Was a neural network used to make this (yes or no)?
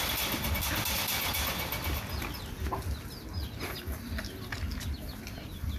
no